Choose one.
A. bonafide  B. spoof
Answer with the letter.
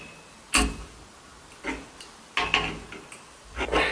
A